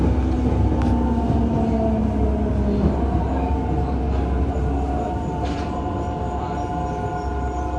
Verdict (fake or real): real